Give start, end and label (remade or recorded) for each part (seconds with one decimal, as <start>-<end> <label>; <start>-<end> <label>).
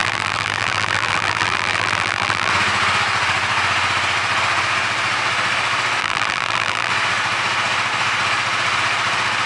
0.0-2.5 remade; 2.5-6.0 recorded; 6.0-6.9 remade; 6.9-9.5 recorded